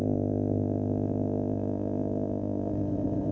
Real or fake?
fake